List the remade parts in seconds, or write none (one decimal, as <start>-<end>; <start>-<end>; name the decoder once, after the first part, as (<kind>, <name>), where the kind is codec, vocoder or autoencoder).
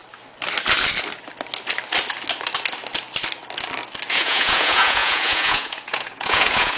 4.1-6.8 (vocoder, Vocos)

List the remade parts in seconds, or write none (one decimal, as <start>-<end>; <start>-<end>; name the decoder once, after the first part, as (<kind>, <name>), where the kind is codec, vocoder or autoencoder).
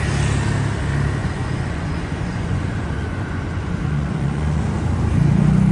1.2-4.6 (vocoder, Vocos)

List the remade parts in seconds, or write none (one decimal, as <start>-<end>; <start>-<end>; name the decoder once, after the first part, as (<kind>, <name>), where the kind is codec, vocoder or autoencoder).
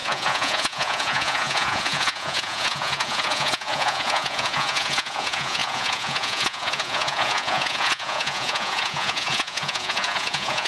0.0-10.7 (vocoder, Vocos)